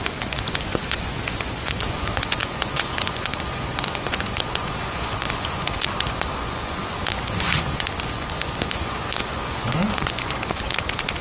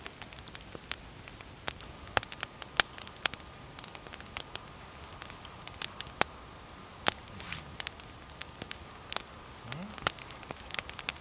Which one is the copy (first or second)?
first